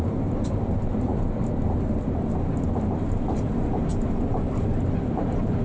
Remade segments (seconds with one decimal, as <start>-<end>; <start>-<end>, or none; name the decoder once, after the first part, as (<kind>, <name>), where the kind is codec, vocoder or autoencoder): 0.0-3.9 (vocoder, BigVGAN v2); 5.1-5.6